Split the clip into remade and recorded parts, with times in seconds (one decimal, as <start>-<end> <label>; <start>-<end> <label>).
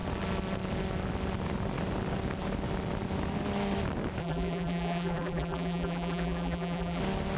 0.0-4.2 recorded; 4.2-7.0 remade; 7.0-7.4 recorded